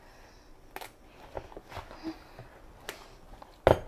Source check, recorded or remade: recorded